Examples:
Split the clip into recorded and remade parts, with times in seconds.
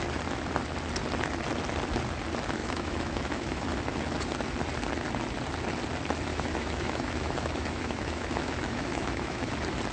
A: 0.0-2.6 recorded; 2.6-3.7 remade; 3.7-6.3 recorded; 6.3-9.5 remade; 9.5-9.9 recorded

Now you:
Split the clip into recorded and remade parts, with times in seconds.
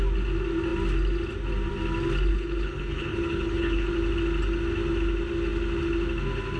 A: 0.0-2.3 recorded; 2.3-3.9 remade; 3.9-6.6 recorded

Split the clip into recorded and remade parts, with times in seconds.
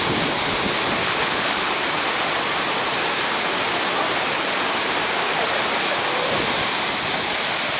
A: 0.0-1.0 recorded; 1.0-1.7 remade; 1.7-7.8 recorded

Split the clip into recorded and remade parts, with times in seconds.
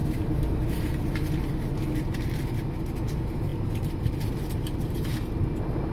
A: 0.0-1.2 remade; 1.2-3.5 recorded; 3.5-5.2 remade; 5.2-5.9 recorded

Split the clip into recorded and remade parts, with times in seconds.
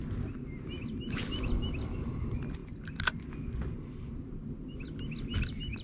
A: 0.0-5.8 recorded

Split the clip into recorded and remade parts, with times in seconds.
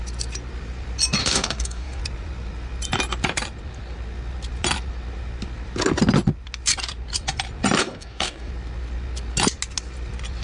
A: 0.0-1.2 recorded; 1.2-2.0 remade; 2.0-7.8 recorded; 7.8-8.5 remade; 8.5-10.4 recorded